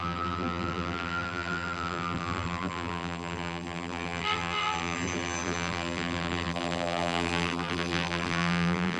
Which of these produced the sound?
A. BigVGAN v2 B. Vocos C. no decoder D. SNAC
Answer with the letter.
A